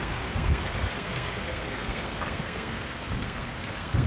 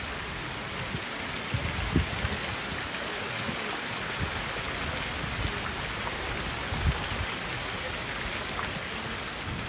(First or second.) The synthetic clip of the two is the first